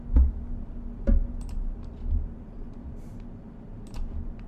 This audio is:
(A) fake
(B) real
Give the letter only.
B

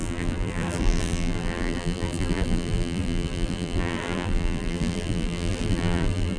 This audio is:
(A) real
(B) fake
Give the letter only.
B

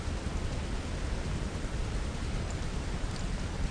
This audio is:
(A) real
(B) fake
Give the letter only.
B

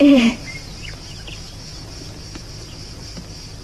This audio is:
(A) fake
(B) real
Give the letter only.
A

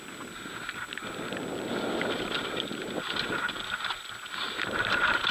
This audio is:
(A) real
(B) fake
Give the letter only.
A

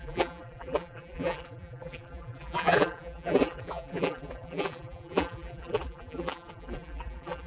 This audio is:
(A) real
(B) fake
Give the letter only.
B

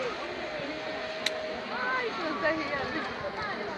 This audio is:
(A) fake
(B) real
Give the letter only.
B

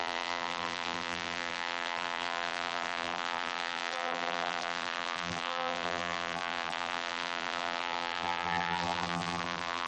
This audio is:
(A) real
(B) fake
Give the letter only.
B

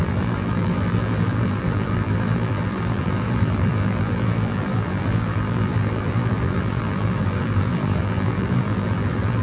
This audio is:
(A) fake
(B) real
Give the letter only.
A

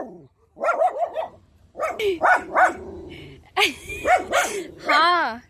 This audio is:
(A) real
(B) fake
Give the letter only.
B